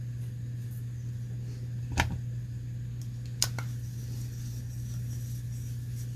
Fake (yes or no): no